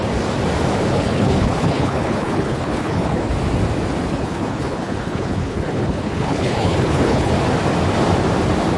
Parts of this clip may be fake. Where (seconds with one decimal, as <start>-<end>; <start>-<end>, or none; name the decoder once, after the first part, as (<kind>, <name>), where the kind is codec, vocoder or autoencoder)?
0.9-3.3 (codec, HILCodec); 4.1-7.3